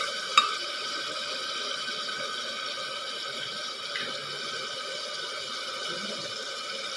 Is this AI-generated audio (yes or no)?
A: no